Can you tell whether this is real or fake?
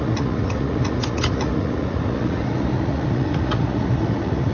fake